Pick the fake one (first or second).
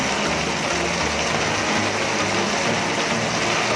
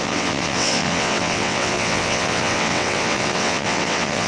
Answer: second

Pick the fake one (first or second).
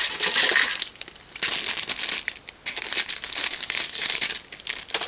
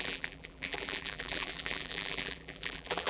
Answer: second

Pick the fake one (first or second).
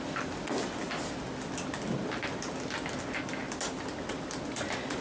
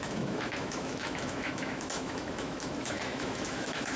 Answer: second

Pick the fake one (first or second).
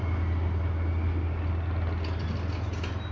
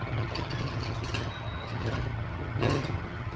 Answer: second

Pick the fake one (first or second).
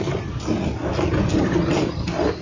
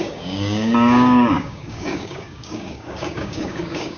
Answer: second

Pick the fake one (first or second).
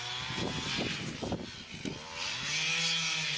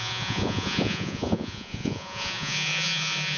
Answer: second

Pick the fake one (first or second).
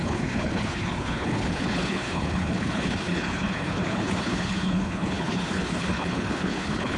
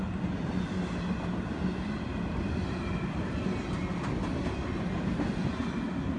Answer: first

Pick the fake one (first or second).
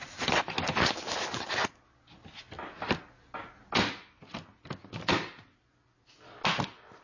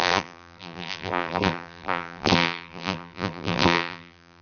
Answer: second